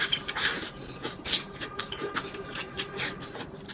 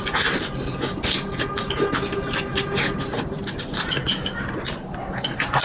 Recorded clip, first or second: second